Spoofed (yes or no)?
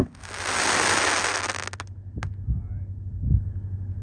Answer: no